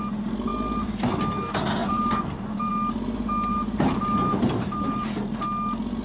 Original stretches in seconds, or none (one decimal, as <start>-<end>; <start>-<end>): 0.0-1.8; 2.7-3.5; 5.4-6.0

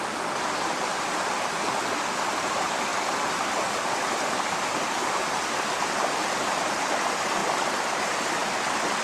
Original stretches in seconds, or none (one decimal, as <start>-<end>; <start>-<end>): 0.0-9.0

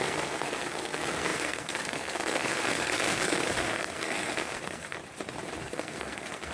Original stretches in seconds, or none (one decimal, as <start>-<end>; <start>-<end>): 5.0-5.6

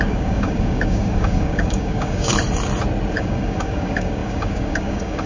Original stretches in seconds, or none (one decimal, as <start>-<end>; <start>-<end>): 2.3-3.1

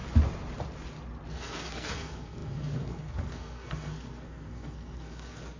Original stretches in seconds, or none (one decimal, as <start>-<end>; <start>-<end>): 0.0-1.3

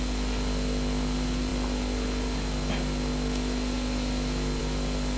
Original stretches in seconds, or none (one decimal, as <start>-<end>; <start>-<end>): 0.0-5.2

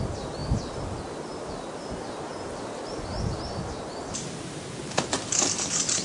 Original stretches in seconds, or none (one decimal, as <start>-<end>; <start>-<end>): 0.0-6.0

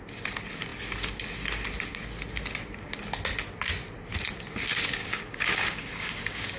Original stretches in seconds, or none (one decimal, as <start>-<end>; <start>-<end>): 0.0-5.0